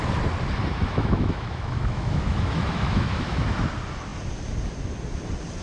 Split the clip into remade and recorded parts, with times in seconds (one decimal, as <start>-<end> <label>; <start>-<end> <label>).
0.0-0.7 recorded; 0.7-3.6 remade; 3.6-5.6 recorded